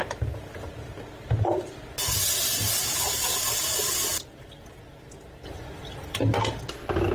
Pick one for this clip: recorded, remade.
recorded